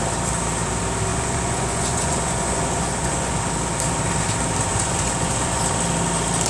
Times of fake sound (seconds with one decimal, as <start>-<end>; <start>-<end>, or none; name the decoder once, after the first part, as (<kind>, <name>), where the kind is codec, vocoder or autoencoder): 1.1-3.5 (vocoder, Vocos); 4.7-5.6